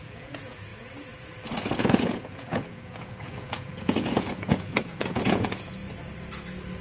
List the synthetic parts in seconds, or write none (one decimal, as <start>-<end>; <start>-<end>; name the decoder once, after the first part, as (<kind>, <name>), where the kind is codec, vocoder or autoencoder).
0.0-5.8 (vocoder, Vocos)